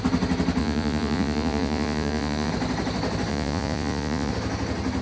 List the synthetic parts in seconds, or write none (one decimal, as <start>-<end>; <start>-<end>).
0.6-2.5; 3.3-4.3

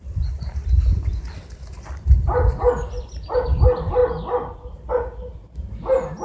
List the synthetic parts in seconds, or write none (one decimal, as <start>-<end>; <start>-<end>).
0.0-1.1; 2.9-4.0; 4.9-6.2

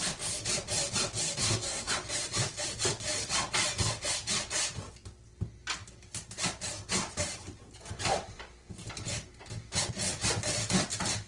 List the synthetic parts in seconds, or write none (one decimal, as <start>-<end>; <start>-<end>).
1.4-1.9

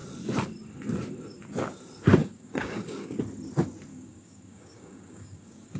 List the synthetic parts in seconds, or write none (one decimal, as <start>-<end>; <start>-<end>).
2.2-3.2; 3.9-5.8

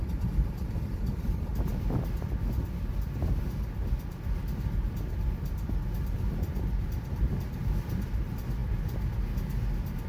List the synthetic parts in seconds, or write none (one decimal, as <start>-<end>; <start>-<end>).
none

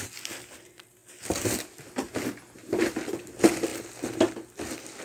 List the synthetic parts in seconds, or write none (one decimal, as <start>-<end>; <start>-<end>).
none